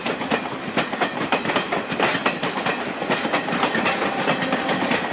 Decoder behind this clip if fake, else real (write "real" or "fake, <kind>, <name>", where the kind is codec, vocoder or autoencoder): real